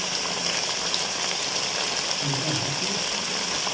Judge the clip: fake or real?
real